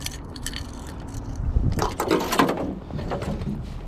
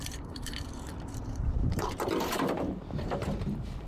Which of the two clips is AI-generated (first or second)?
second